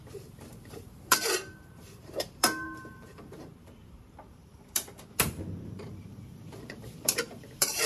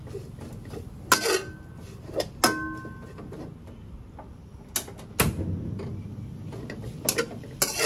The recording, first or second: second